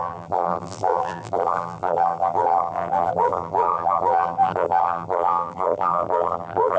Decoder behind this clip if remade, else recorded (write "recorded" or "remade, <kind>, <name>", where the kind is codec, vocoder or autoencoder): remade, vocoder, BigVGAN v2